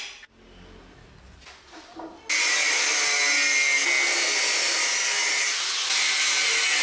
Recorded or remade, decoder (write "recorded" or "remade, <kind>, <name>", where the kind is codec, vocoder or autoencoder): recorded